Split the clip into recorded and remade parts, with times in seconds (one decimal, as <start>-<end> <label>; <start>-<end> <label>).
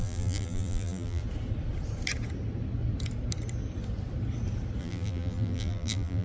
0.0-1.2 remade; 1.2-4.8 recorded; 4.8-6.2 remade